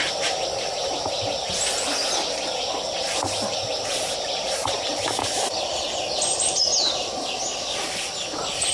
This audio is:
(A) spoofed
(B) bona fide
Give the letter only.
B